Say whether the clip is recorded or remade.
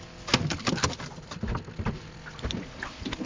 recorded